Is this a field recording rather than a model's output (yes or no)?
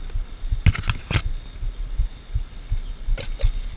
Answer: yes